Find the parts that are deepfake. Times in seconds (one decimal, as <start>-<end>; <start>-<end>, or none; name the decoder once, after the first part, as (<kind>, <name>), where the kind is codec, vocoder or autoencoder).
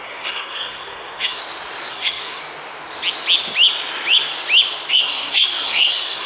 0.0-1.4 (codec, SNAC); 1.9-2.4; 4.9-6.3